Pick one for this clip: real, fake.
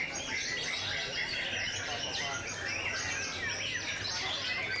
real